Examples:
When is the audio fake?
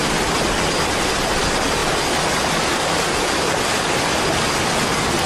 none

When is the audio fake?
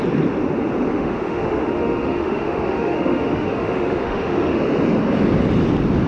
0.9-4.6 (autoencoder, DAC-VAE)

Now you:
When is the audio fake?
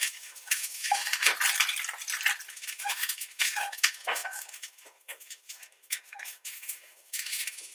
0.0-1.3 (autoencoder, DAC-VAE); 2.5-7.7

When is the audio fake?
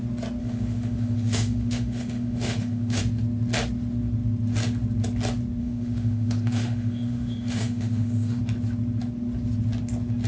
0.4-3.0 (autoencoder, DAC-VAE); 5.6-8.4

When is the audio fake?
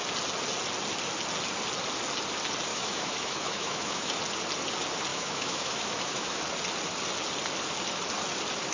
2.7-4.2 (autoencoder, DAC-VAE); 5.1-6.4